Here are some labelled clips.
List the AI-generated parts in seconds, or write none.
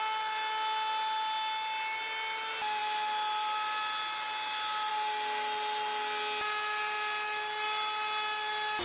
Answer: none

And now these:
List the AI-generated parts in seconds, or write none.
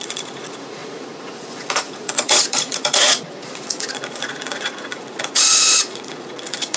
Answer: 0.0-6.8 (vocoder, Vocos)